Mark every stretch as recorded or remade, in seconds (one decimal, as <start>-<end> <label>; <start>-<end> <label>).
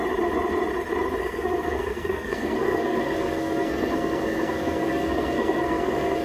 0.0-1.2 recorded; 1.2-6.2 remade